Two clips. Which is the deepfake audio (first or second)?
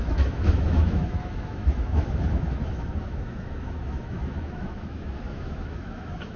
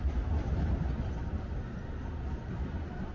first